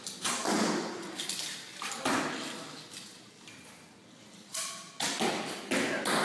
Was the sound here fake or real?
real